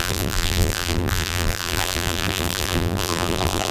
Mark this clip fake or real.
fake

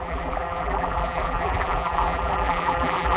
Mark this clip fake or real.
fake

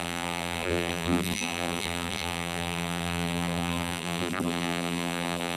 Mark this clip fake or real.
fake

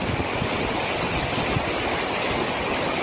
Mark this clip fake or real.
real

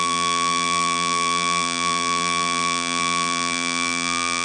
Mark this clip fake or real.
fake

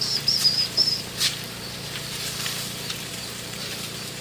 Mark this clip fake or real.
fake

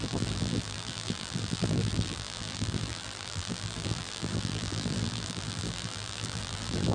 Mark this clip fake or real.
fake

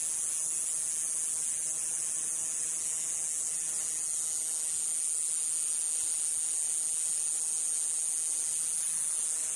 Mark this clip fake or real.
real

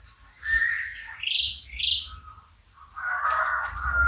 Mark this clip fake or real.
real